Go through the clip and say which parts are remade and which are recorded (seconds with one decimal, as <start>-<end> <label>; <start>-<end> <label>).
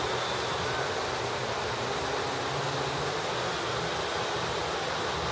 0.0-5.3 recorded